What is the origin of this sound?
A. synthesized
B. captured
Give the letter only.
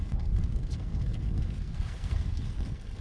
A